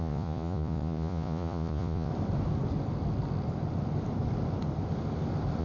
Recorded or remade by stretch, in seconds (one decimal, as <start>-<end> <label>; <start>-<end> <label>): 0.0-2.1 remade; 2.1-5.6 recorded